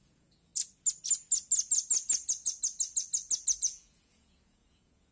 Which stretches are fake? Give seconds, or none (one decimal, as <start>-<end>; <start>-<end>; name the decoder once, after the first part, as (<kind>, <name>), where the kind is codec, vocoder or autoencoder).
0.0-0.5 (vocoder, Vocos); 3.6-5.1